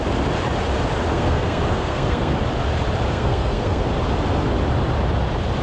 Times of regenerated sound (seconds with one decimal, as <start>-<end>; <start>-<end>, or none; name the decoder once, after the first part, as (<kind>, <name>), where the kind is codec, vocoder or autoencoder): 1.1-2.3 (codec, SNAC); 3.1-3.8